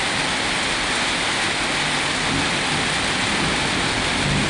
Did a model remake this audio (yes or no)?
no